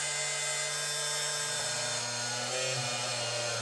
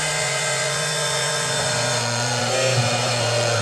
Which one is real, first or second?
first